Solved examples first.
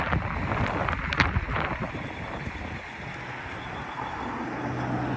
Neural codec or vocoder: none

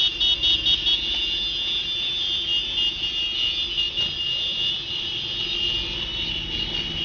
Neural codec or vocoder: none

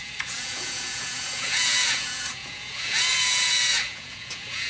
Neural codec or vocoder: vocoder, Vocos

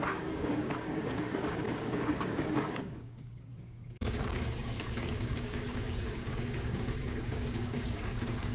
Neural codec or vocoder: codec, DAC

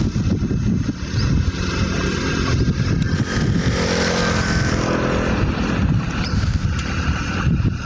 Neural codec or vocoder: none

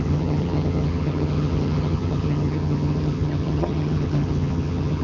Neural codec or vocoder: vocoder, HiFi-GAN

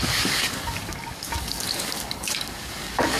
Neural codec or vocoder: codec, DAC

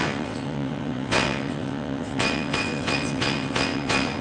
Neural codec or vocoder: vocoder, WaveNeXt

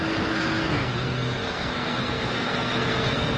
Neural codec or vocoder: codec, SNAC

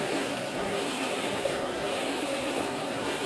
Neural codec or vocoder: codec, SNAC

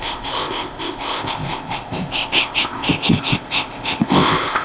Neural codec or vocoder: codec, ZipCodec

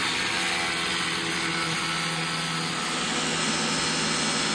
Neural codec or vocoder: none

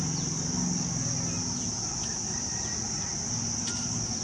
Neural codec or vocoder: none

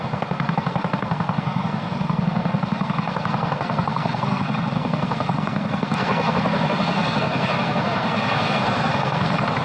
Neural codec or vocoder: codec, SNAC